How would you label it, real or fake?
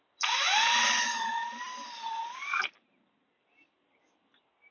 real